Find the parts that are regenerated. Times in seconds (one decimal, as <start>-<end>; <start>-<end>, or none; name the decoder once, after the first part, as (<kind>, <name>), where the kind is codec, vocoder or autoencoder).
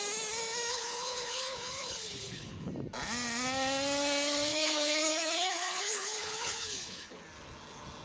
0.7-2.7 (codec, HILCodec); 4.5-7.2